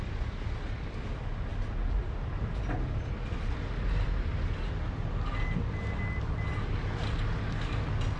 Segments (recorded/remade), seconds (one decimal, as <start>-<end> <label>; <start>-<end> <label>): 0.0-8.2 recorded